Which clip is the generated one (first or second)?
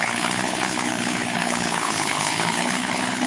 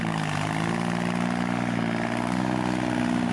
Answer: first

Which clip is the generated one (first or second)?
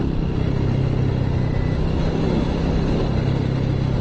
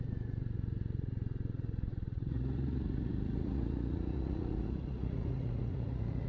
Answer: second